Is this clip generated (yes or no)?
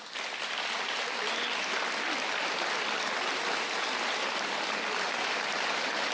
no